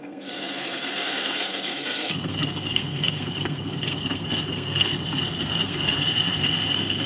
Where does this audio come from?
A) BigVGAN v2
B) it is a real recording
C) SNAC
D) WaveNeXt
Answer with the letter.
C